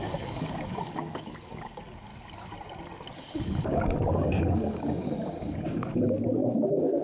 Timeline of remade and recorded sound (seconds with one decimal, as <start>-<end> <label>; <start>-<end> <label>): 0.0-2.1 remade; 2.1-3.1 recorded; 3.1-7.0 remade